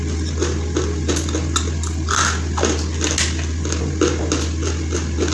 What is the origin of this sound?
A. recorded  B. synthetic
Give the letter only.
A